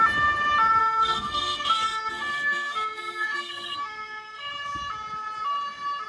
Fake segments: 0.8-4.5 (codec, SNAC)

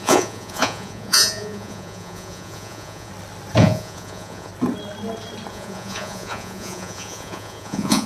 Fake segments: 0.0-3.1 (vocoder, Vocos); 3.6-4.5; 5.5-8.1

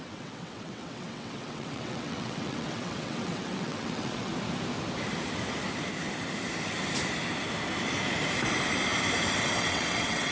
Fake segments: 0.0-4.3 (vocoder, WaveNeXt); 9.4-10.3

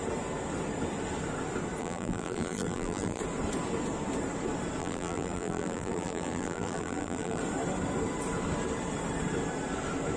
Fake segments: 1.8-3.2 (vocoder, BigVGAN v2); 4.8-7.4